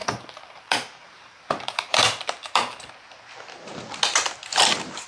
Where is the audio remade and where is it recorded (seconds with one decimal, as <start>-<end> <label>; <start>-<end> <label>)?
0.0-2.9 remade; 2.9-5.1 recorded